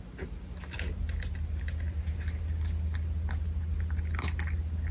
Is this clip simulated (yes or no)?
no